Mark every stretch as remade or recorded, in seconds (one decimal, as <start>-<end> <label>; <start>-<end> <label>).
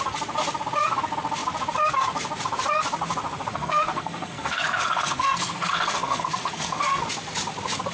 0.0-3.5 recorded; 3.5-7.0 remade; 7.0-7.9 recorded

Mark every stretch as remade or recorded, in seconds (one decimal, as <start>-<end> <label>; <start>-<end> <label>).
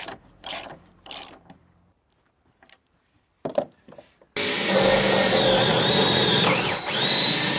0.0-4.2 remade; 4.2-5.7 recorded; 5.7-7.6 remade